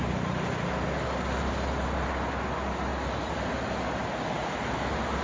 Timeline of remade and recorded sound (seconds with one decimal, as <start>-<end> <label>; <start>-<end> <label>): 0.0-2.9 recorded; 2.9-3.5 remade; 3.5-5.2 recorded